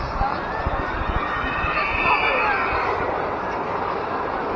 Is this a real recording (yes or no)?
yes